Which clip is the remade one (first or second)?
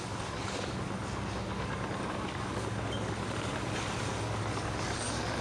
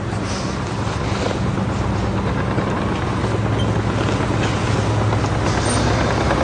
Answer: first